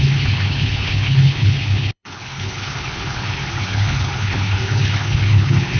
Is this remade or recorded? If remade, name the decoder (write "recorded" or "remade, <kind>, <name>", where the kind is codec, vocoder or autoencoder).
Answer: remade, codec, HILCodec